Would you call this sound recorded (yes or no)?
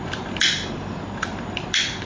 no